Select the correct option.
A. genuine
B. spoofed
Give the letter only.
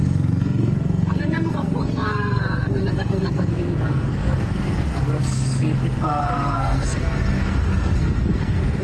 B